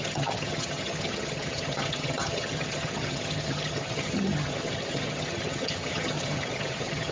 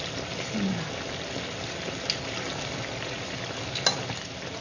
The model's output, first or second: first